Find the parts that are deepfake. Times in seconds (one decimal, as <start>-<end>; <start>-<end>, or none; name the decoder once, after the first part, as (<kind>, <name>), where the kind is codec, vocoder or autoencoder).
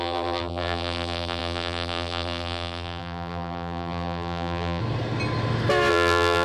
0.0-4.8 (vocoder, BigVGAN v2); 5.9-6.4